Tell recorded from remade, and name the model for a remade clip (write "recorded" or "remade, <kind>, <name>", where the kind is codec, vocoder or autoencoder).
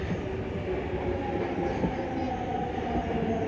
recorded